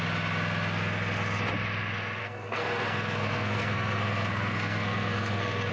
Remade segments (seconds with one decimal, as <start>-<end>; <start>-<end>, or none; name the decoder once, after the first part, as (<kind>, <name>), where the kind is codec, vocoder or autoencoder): 2.2-5.7 (codec, SNAC)